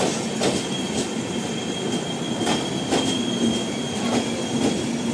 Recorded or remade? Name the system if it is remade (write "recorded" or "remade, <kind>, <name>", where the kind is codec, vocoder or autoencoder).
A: recorded